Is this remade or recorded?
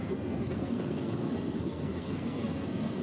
remade